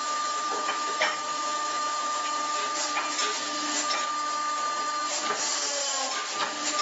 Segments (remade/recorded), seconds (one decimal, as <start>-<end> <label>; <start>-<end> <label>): 0.0-2.6 remade; 2.6-6.8 recorded

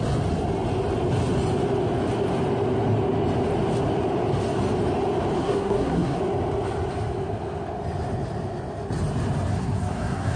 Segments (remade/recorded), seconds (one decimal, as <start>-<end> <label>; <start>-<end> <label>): 0.0-5.4 recorded; 5.4-6.2 remade; 6.2-9.5 recorded; 9.5-10.4 remade

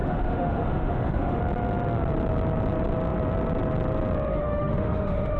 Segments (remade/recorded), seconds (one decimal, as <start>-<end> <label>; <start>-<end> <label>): 0.0-1.4 remade; 1.4-4.3 recorded; 4.3-5.4 remade

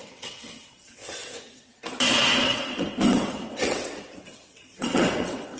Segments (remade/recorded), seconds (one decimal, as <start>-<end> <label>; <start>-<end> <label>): 0.0-1.8 remade; 1.8-2.4 recorded; 2.4-5.6 remade